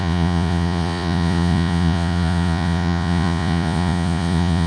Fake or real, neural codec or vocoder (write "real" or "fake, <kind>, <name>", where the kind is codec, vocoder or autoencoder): fake, vocoder, Vocos